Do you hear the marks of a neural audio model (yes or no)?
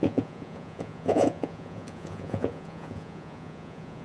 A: yes